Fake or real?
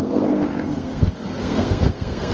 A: fake